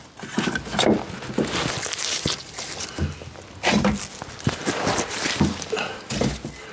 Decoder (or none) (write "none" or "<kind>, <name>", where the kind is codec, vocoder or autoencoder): none